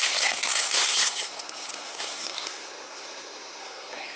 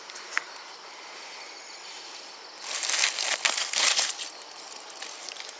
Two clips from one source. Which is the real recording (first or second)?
second